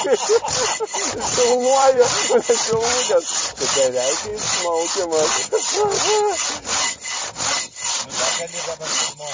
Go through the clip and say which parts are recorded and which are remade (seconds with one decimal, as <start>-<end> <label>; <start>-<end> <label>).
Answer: 0.0-1.3 recorded; 1.3-3.9 remade; 3.9-9.3 recorded